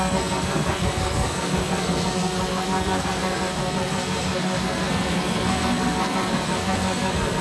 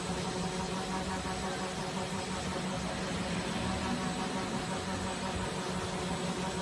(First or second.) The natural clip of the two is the second